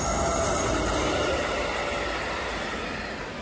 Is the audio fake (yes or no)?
no